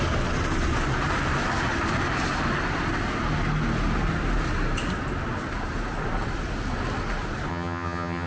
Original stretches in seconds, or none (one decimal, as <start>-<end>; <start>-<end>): 0.0-7.5